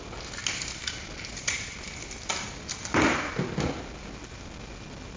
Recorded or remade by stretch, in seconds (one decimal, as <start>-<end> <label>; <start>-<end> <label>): 0.0-5.2 recorded